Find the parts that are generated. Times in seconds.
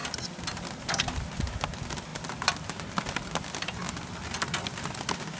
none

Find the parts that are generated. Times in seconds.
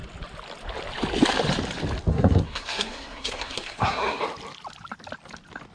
2.1-4.2 (codec, SNAC)